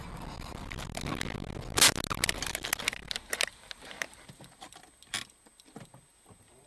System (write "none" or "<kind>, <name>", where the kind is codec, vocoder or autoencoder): none